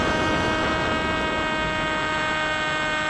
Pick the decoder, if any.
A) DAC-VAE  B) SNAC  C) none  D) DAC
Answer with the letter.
C